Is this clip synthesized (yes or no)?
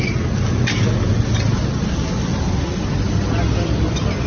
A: no